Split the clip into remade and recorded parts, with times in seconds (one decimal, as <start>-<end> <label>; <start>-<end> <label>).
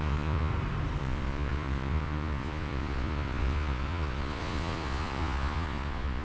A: 0.0-0.5 remade; 0.5-1.0 recorded; 1.0-6.2 remade